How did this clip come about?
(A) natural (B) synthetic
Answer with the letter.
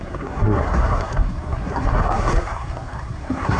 B